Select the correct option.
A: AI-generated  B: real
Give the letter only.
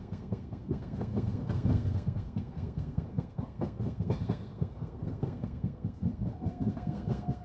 A